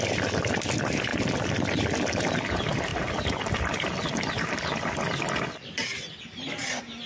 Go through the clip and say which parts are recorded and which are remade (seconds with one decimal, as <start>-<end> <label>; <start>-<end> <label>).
0.0-1.1 recorded; 1.1-2.2 remade; 2.2-2.9 recorded; 2.9-5.3 remade; 5.3-7.1 recorded